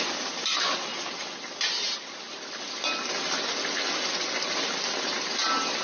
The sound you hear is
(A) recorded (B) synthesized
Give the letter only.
A